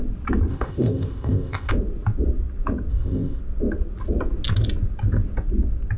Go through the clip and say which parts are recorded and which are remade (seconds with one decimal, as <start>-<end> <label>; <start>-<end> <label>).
0.0-0.5 recorded; 0.5-1.7 remade; 1.7-2.9 recorded; 2.9-3.4 remade; 3.4-6.0 recorded